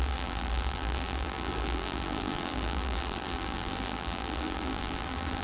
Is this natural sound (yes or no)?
no